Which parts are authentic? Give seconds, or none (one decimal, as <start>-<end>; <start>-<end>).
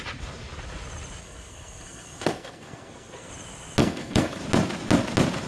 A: 0.0-1.2; 3.3-3.8; 4.4-5.5